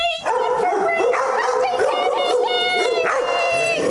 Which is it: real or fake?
fake